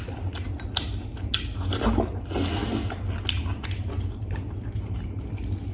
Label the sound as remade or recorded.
recorded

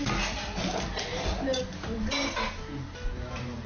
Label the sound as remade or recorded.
recorded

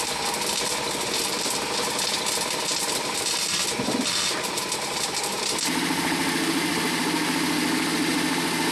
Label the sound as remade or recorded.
recorded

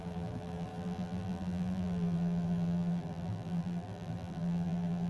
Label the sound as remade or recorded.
remade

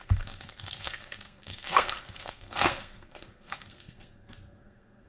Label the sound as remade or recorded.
remade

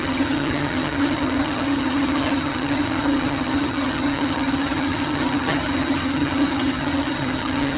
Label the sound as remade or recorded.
remade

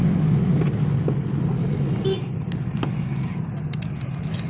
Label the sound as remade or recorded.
recorded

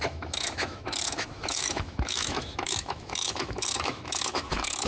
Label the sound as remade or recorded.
remade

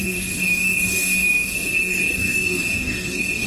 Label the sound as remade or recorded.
remade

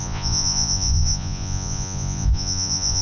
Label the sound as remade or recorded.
remade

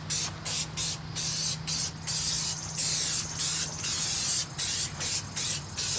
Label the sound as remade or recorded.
recorded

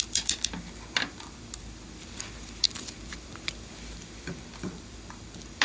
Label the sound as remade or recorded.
remade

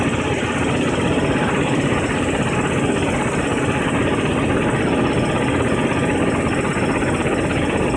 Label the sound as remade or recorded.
recorded